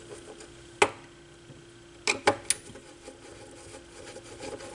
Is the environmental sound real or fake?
real